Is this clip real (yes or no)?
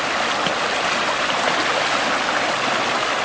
yes